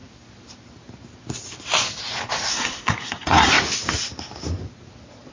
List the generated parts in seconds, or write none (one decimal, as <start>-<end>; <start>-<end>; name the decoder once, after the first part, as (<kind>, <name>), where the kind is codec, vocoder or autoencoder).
2.5-3.5 (codec, SNAC)